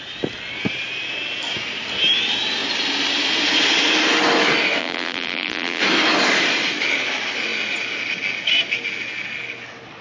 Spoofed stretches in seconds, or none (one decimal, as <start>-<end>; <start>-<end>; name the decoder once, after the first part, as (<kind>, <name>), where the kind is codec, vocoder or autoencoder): 4.8-5.8 (vocoder, BigVGAN v2)